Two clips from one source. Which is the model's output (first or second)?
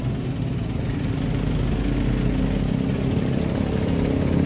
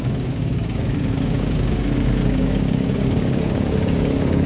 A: second